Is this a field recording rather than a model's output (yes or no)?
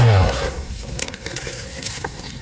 no